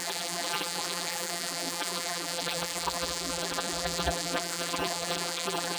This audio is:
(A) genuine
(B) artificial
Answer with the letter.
B